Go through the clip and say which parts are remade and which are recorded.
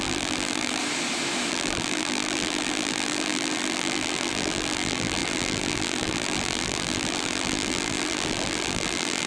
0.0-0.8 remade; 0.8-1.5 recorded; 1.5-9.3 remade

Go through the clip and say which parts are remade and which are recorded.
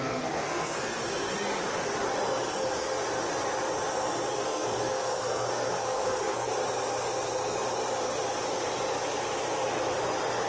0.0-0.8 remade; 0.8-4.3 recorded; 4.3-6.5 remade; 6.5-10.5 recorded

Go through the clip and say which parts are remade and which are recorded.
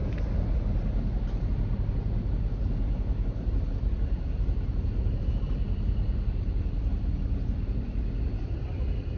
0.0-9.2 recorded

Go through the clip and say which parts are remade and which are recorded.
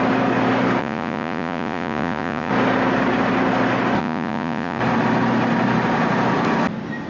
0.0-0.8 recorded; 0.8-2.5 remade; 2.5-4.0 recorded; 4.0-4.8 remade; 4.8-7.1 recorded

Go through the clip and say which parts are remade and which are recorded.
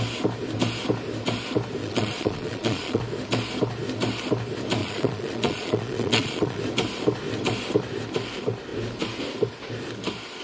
0.0-1.8 recorded; 1.8-3.0 remade; 3.0-4.8 recorded; 4.8-6.6 remade; 6.6-10.4 recorded